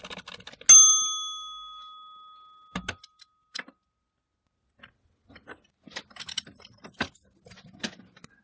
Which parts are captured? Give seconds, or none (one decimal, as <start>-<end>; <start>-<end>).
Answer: 0.0-8.4